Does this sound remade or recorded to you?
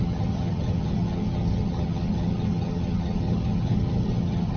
remade